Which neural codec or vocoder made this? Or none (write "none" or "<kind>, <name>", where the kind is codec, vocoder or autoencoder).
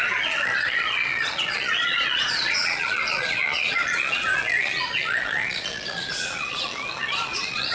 vocoder, Vocos